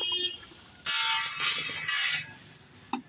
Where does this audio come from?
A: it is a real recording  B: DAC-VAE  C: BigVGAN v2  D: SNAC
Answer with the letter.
A